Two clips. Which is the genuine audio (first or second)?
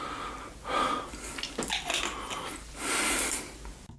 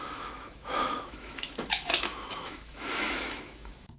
first